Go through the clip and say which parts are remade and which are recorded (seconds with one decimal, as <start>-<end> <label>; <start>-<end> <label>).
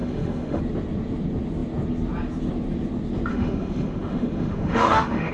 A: 0.0-0.6 remade; 0.6-3.3 recorded; 3.3-5.3 remade